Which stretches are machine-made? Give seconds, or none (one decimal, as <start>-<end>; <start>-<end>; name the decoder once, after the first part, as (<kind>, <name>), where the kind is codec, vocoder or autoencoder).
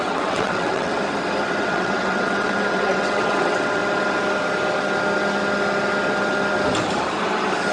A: 0.0-1.0 (vocoder, WaveNeXt); 1.6-3.8